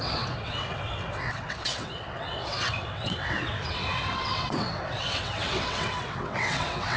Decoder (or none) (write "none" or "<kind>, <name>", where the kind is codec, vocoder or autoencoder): vocoder, WaveNeXt